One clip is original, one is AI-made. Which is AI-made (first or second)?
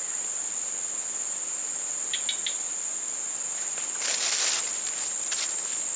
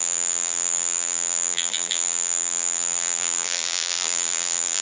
second